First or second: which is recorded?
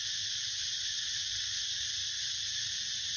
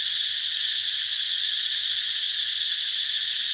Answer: second